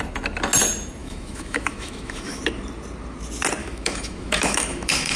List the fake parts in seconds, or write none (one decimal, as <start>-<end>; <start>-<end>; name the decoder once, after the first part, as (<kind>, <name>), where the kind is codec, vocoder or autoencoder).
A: 1.0-2.4 (autoencoder, DAC-VAE); 3.6-5.2